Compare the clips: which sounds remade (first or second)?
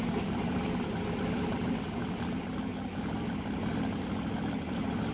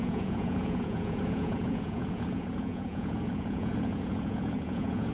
second